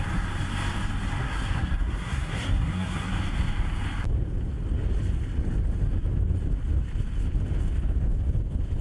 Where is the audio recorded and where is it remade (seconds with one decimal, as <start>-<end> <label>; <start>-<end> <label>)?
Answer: 0.0-1.2 recorded; 1.2-3.1 remade; 3.1-8.8 recorded